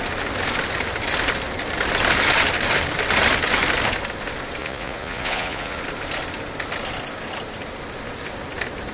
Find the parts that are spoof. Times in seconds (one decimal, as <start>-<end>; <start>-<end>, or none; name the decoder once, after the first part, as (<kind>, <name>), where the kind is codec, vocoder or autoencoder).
4.6-5.8 (vocoder, Vocos)